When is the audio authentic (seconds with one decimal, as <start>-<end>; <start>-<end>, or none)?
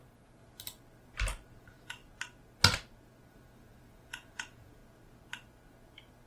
0.4-1.6; 2.0-3.3; 4.8-6.3